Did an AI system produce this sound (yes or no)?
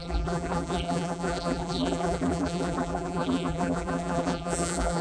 yes